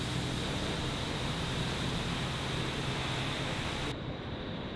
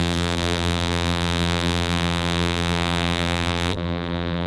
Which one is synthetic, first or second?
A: second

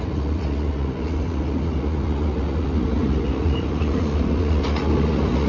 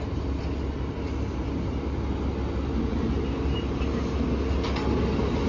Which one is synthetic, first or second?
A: first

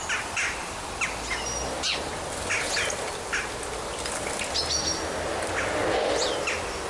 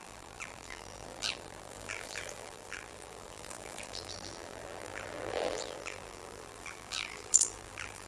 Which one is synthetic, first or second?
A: second